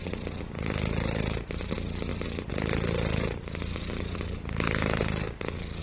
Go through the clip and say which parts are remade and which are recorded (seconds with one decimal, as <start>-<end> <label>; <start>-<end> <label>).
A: 0.0-5.8 recorded

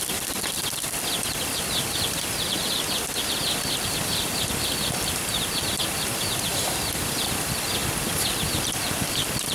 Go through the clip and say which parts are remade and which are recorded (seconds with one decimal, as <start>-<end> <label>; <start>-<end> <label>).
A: 0.0-9.5 recorded

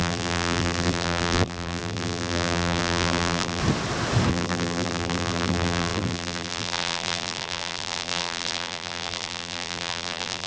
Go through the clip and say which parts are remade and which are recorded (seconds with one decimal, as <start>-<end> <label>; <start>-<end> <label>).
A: 0.0-3.6 remade; 3.6-4.3 recorded; 4.3-10.5 remade

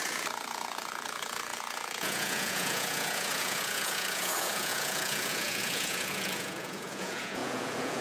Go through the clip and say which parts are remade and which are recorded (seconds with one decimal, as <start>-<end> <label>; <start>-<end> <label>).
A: 0.0-8.0 remade